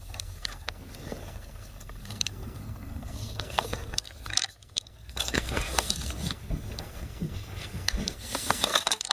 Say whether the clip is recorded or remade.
remade